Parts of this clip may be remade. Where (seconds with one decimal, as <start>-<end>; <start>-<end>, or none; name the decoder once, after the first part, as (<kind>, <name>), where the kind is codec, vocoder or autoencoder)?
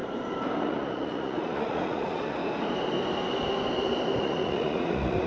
0.6-2.4 (vocoder, Vocos); 4.2-5.3